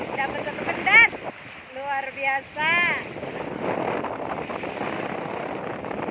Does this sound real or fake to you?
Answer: real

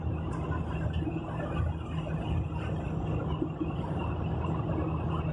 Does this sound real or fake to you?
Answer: real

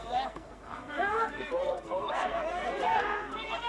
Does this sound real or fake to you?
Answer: fake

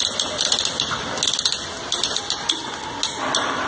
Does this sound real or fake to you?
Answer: real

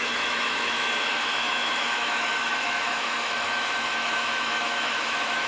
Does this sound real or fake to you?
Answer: fake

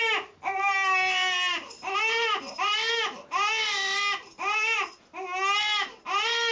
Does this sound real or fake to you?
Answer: real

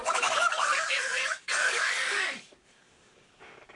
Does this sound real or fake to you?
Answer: fake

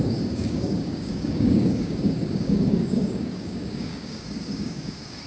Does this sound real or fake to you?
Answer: fake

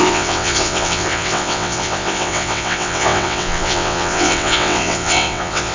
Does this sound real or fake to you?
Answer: fake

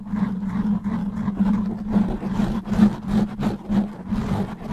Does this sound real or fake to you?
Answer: real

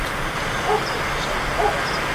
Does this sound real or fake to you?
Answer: real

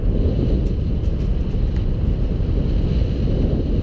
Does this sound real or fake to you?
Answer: real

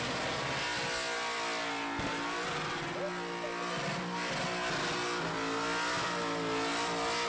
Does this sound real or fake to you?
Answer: real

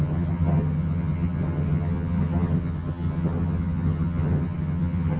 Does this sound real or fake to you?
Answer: fake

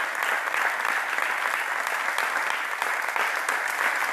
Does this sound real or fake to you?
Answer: real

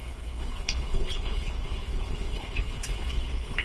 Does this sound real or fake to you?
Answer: fake